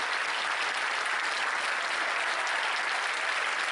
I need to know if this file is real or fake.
real